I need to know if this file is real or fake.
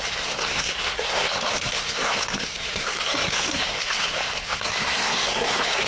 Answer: fake